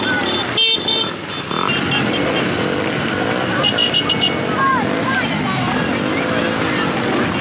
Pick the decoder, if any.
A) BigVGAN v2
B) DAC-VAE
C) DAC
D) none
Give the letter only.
D